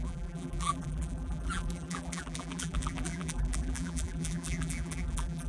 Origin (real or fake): fake